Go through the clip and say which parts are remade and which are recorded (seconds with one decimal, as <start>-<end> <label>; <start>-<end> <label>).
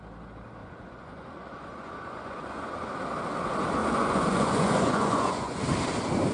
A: 0.0-0.6 recorded; 0.6-2.9 remade; 2.9-3.8 recorded; 3.8-5.6 remade; 5.6-6.3 recorded